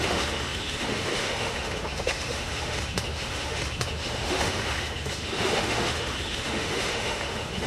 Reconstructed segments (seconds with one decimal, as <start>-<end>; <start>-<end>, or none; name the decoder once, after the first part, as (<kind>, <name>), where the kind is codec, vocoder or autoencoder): 0.0-7.7 (autoencoder, DAC-VAE)